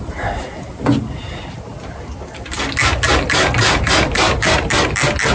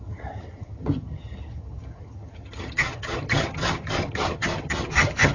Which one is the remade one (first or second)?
second